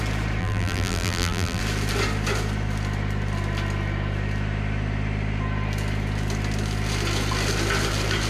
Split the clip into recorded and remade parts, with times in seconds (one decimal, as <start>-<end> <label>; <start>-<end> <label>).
0.0-0.4 recorded; 0.4-1.6 remade; 1.6-8.3 recorded